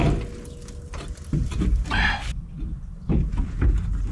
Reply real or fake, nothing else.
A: real